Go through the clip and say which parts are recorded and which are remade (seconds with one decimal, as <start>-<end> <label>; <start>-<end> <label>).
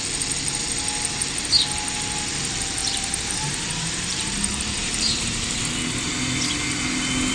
0.0-2.8 recorded; 2.8-5.6 remade; 5.6-7.3 recorded